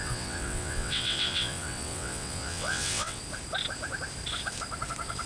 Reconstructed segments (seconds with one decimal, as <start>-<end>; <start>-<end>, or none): 0.0-3.2